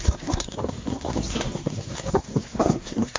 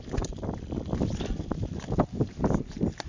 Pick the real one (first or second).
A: second